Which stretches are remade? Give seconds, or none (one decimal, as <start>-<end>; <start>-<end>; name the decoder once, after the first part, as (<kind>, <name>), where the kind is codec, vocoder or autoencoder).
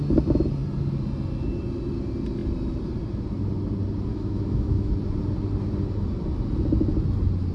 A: 4.1-4.9 (autoencoder, DAC-VAE)